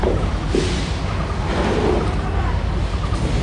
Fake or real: real